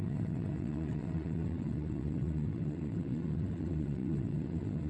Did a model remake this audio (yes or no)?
yes